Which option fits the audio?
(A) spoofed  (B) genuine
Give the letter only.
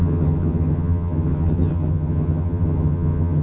A